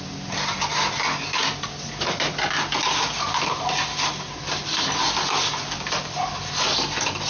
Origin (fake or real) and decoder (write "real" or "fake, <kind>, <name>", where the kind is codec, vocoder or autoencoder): real